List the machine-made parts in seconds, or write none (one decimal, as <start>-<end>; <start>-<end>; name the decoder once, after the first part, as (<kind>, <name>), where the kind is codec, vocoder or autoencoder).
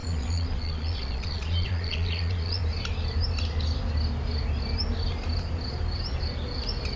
0.0-2.6 (vocoder, Vocos)